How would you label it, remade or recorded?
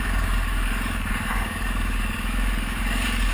remade